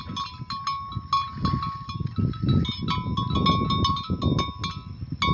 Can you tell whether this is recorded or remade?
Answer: recorded